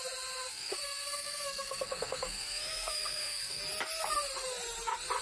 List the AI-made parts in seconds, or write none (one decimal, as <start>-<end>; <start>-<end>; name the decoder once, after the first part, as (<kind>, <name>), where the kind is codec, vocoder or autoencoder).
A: 0.5-3.6 (codec, SNAC)